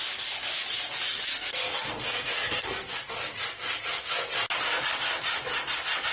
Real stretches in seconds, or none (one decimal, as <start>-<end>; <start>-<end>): 0.0-1.1; 3.0-6.1